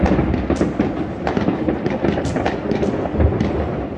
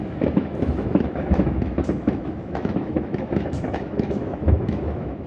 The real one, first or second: first